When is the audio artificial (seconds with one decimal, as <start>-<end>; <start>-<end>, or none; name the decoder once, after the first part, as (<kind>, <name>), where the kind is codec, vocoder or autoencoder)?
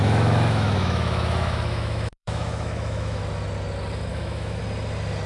0.0-3.2 (autoencoder, DAC-VAE); 4.1-4.6